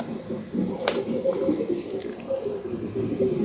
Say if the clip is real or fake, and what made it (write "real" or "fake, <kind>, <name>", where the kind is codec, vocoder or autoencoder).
real